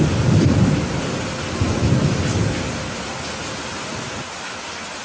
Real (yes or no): yes